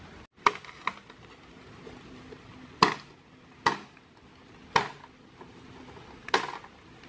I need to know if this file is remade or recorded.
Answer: recorded